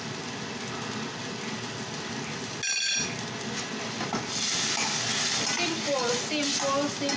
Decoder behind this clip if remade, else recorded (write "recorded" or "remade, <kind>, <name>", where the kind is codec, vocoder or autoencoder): recorded